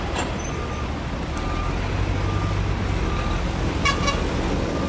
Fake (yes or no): no